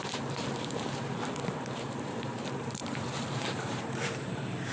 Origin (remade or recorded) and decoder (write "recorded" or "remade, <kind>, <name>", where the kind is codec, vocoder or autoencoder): remade, vocoder, BigVGAN v2